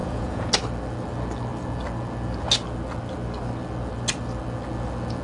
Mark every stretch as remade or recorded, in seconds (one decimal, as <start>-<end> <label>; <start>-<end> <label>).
0.0-0.5 remade; 0.5-5.2 recorded